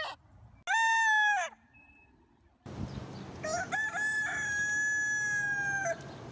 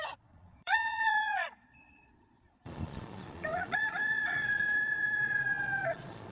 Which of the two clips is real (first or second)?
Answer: first